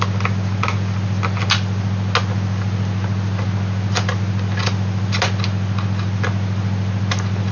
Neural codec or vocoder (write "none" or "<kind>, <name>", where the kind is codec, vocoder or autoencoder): none